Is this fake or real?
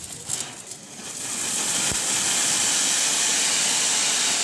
real